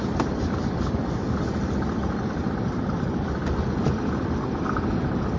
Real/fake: real